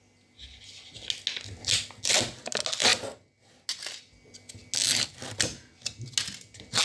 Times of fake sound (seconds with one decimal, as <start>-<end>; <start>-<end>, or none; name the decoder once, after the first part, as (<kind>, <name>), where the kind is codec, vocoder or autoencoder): none